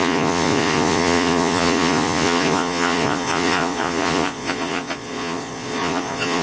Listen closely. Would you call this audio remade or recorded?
remade